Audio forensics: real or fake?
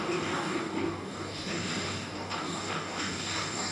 fake